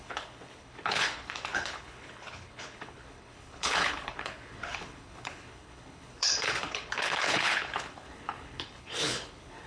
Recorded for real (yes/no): no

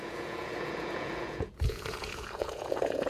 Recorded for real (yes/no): no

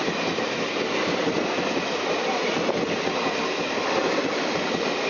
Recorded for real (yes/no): yes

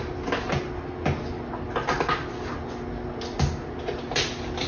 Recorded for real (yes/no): yes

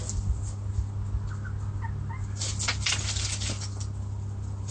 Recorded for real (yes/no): yes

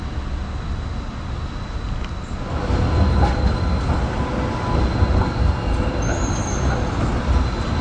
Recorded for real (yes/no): yes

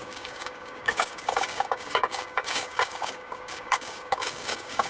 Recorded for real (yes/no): no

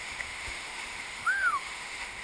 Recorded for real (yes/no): no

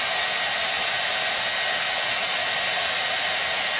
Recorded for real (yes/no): yes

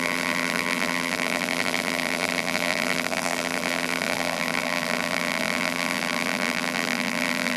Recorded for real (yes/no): no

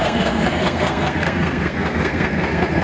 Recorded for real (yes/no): no